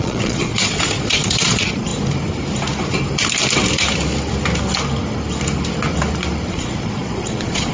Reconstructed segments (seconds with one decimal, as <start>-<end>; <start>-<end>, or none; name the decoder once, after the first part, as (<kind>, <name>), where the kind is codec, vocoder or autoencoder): 0.0-1.9 (vocoder, Vocos); 6.5-7.7